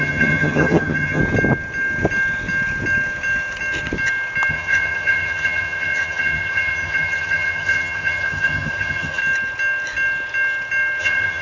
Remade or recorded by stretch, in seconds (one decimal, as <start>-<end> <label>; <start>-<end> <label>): 0.0-1.2 remade; 1.2-4.5 recorded; 4.5-9.2 remade; 9.2-11.0 recorded; 11.0-11.4 remade